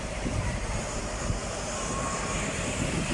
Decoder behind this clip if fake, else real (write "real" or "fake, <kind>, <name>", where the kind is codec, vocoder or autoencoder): fake, vocoder, BigVGAN v2